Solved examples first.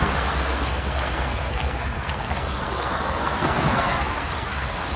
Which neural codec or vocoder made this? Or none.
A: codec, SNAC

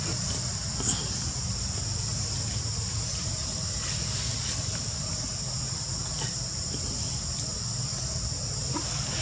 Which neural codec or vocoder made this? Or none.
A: none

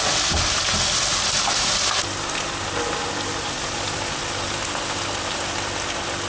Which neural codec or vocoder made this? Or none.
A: none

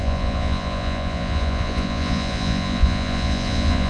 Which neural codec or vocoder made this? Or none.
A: vocoder, Vocos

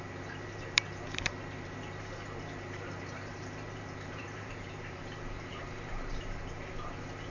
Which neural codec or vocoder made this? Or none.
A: vocoder, BigVGAN v2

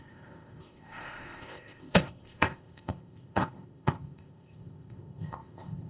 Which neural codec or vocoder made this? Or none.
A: codec, ZipCodec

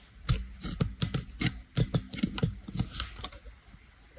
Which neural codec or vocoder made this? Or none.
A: none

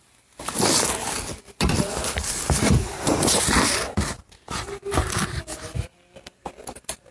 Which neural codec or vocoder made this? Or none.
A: none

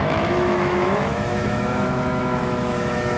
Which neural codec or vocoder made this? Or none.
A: autoencoder, DAC-VAE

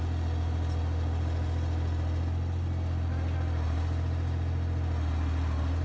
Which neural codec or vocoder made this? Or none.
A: none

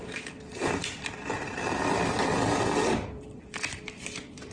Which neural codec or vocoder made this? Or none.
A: vocoder, BigVGAN v2